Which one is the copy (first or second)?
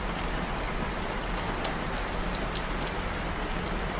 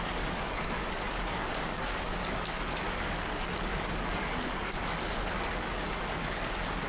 second